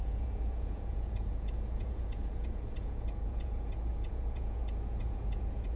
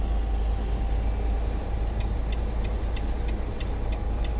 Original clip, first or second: second